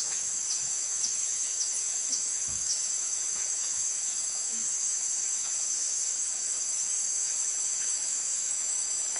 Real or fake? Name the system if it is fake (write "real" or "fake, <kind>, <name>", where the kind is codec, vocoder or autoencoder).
fake, autoencoder, DAC-VAE